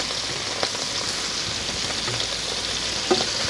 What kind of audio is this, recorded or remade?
recorded